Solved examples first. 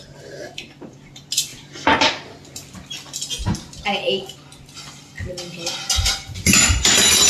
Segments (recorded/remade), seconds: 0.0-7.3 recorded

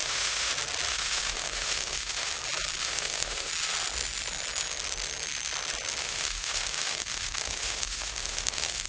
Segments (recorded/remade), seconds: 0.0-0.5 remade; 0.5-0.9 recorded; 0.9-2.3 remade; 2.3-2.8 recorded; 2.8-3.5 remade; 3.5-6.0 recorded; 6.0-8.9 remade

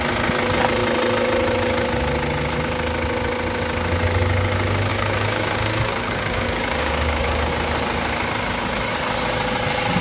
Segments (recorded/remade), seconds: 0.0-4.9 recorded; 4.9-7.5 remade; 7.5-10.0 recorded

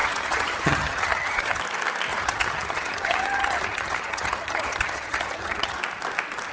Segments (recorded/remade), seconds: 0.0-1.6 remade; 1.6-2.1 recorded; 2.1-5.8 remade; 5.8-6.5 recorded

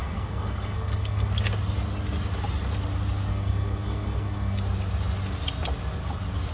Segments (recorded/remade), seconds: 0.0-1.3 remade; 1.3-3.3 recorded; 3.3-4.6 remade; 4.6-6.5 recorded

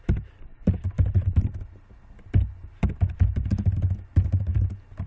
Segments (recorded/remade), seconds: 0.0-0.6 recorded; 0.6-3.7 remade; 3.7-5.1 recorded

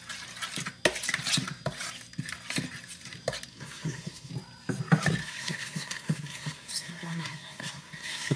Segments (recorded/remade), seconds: 0.0-3.5 recorded; 3.5-4.3 remade; 4.3-5.2 recorded; 5.2-8.4 remade

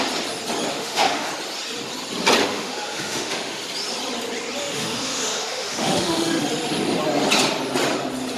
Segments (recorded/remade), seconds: 0.0-0.7 recorded; 0.7-1.3 remade; 1.3-2.4 recorded; 2.4-3.6 remade; 3.6-4.6 recorded; 4.6-6.4 remade; 6.4-8.4 recorded